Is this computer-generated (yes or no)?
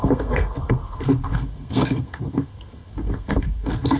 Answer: yes